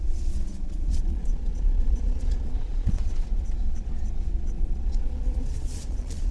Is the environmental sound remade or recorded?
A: remade